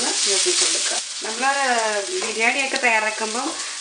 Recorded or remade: remade